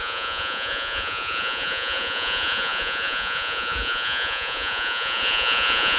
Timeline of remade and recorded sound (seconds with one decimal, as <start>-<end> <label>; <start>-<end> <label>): 0.0-6.0 remade